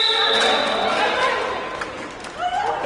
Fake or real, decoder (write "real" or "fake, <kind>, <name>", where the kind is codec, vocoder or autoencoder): real